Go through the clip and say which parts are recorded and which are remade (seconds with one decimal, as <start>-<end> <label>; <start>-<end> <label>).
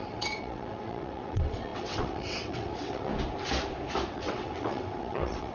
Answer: 0.0-3.1 remade; 3.1-4.1 recorded; 4.1-5.5 remade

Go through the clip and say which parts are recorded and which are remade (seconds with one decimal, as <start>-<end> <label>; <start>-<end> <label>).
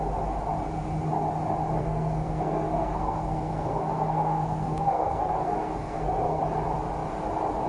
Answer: 0.0-1.8 recorded; 1.8-6.4 remade; 6.4-7.7 recorded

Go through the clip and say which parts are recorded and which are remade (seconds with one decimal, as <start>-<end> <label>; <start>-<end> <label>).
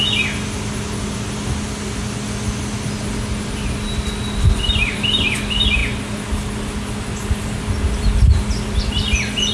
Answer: 0.0-9.5 recorded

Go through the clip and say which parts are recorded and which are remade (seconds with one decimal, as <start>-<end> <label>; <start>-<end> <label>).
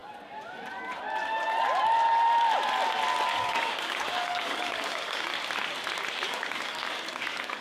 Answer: 0.0-3.2 recorded; 3.2-5.3 remade; 5.3-6.1 recorded; 6.1-7.6 remade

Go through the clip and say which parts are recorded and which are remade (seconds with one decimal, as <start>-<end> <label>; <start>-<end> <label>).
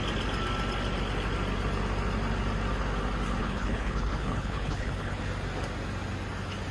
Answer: 0.0-3.4 recorded; 3.4-5.2 remade; 5.2-6.7 recorded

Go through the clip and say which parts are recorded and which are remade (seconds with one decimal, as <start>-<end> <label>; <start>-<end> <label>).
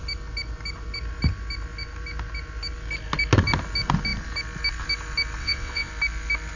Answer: 0.0-5.4 recorded; 5.4-5.9 remade; 5.9-6.6 recorded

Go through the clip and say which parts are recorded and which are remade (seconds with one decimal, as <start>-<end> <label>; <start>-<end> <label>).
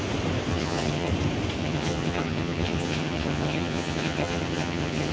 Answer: 0.0-0.5 recorded; 0.5-1.1 remade; 1.1-1.6 recorded; 1.6-5.1 remade